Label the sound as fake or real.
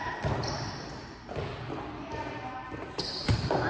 real